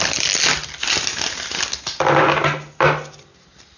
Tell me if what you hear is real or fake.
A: real